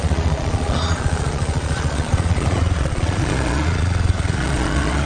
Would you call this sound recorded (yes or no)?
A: no